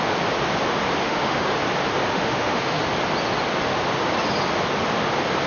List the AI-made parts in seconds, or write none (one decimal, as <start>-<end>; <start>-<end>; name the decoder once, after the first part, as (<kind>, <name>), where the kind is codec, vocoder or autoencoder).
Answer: 1.0-1.5 (autoencoder, DAC-VAE); 2.1-2.8